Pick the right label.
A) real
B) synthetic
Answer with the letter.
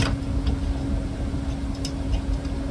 A